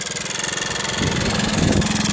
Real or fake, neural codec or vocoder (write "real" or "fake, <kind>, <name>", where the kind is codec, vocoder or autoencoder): real